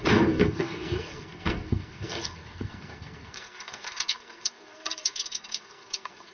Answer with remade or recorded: remade